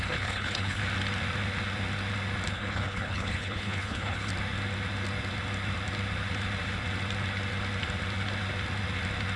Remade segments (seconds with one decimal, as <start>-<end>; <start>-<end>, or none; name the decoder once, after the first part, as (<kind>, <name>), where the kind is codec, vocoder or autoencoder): 0.0-0.8 (codec, HILCodec); 2.5-4.3